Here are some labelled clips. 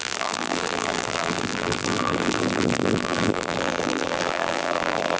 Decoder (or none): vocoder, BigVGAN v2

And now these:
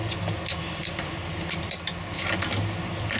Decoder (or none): none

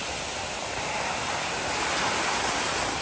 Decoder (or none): none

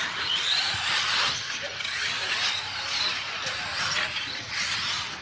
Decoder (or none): none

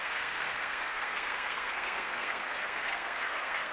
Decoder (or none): codec, SNAC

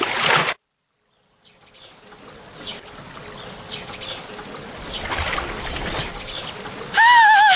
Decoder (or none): none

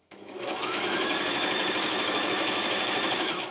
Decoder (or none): autoencoder, DAC-VAE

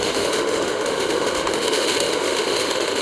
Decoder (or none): autoencoder, DAC-VAE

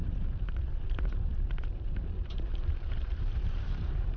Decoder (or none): vocoder, BigVGAN v2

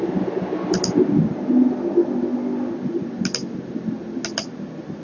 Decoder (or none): none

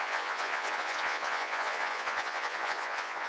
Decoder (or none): vocoder, Vocos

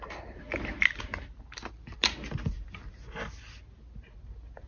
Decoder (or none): none